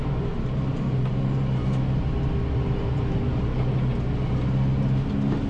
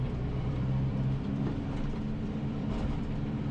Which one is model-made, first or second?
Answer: second